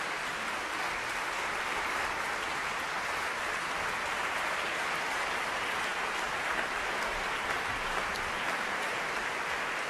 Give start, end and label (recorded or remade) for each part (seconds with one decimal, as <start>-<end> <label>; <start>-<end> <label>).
0.0-9.9 recorded